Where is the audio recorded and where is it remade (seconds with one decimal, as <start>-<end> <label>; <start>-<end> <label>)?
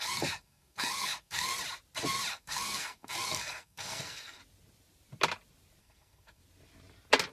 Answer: 0.0-1.5 remade; 1.5-2.3 recorded; 2.3-4.4 remade; 4.4-5.8 recorded; 5.8-6.4 remade; 6.4-7.3 recorded